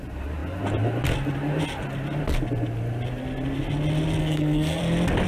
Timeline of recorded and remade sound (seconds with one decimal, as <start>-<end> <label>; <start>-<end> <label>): 0.0-4.2 recorded; 4.2-4.8 remade; 4.8-5.3 recorded